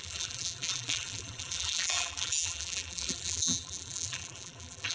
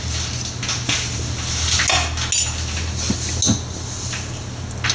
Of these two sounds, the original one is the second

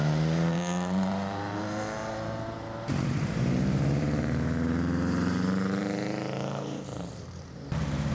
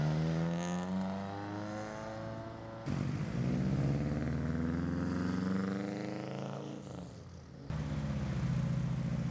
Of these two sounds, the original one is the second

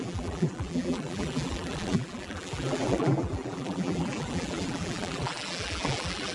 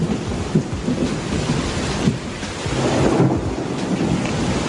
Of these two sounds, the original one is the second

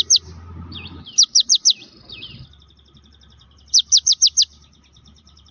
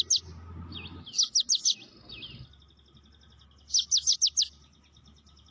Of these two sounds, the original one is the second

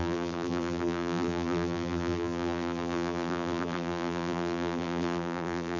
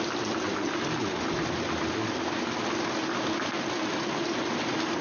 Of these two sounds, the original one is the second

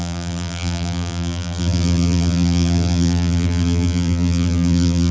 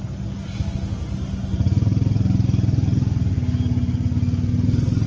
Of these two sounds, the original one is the second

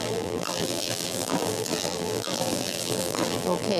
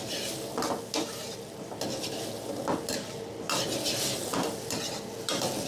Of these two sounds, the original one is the second